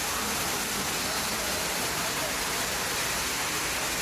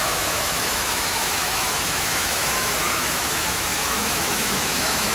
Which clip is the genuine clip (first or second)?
first